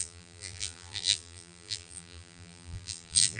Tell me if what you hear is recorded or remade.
remade